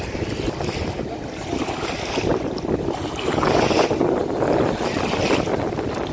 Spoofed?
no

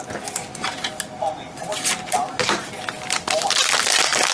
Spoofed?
no